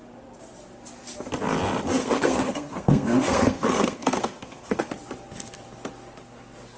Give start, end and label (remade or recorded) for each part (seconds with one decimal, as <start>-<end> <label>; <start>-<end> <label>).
0.0-2.0 recorded; 2.0-4.9 remade; 4.9-6.8 recorded